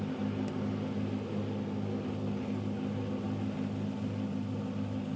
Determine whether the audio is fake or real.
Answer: real